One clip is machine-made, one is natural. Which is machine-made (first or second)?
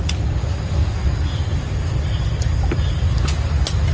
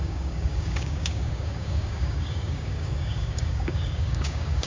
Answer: second